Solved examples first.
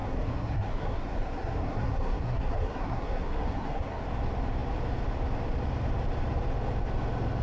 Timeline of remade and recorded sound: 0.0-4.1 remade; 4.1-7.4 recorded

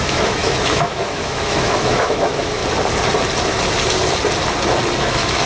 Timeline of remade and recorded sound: 0.0-2.6 remade; 2.6-5.0 recorded; 5.0-5.5 remade